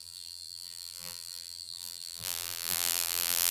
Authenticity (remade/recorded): remade